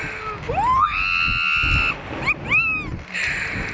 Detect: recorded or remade recorded